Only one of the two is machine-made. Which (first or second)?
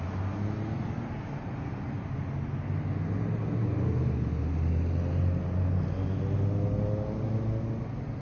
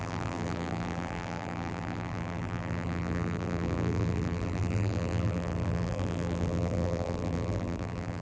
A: second